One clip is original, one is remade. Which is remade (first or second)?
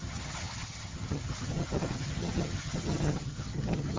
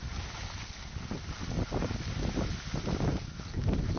first